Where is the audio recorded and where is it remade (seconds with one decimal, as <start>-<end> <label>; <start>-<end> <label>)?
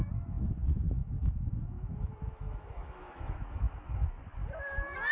0.0-1.0 recorded; 1.0-4.1 remade; 4.1-5.1 recorded